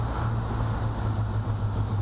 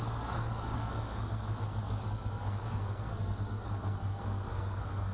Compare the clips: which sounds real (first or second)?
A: first